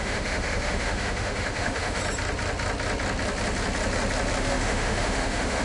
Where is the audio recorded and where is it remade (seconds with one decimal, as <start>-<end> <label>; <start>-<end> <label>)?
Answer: 0.0-2.0 remade; 2.0-4.4 recorded; 4.4-5.6 remade